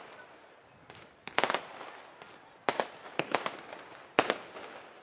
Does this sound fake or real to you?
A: real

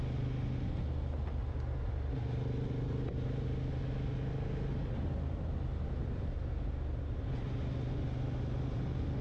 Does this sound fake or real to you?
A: real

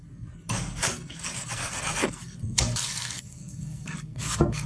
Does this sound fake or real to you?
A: fake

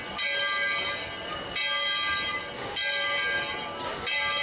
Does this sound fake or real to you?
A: real